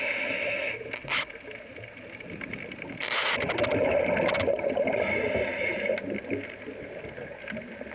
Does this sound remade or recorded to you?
recorded